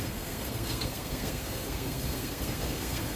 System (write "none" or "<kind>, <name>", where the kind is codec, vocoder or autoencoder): codec, SNAC